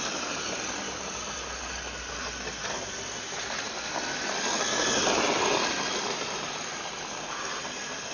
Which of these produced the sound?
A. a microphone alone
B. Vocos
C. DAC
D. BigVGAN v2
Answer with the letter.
A